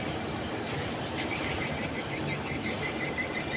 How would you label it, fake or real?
real